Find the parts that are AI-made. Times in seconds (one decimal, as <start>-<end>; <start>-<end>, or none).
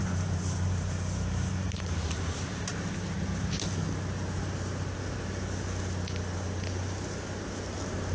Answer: 0.0-2.6